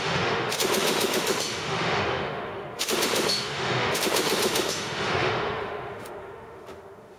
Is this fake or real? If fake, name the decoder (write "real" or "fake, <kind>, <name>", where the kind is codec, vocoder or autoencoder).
fake, autoencoder, DAC-VAE